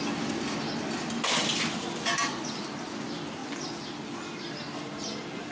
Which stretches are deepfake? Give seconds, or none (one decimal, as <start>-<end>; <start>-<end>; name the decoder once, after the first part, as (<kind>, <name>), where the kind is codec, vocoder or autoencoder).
none